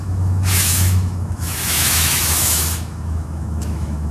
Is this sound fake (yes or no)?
yes